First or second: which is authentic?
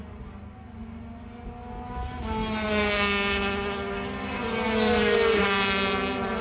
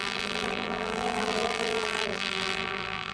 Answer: first